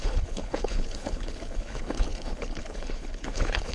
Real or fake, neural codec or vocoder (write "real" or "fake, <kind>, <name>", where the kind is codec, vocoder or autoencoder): fake, codec, HILCodec